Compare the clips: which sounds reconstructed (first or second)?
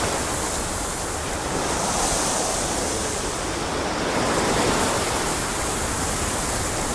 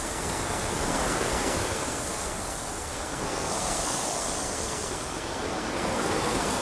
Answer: second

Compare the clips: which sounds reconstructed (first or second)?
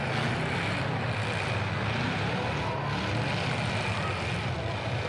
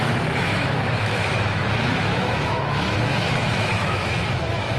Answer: second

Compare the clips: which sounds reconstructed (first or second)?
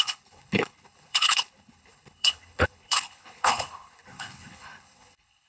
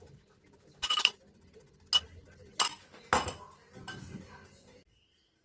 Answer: first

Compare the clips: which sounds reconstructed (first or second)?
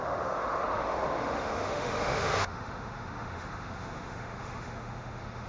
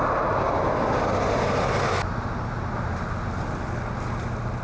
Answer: first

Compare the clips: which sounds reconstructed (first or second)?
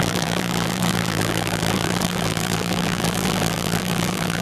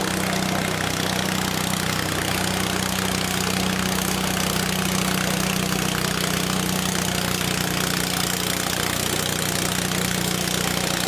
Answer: first